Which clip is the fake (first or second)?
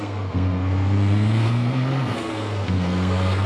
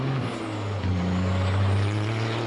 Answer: first